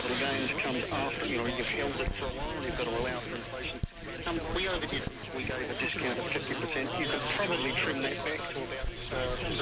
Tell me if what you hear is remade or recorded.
recorded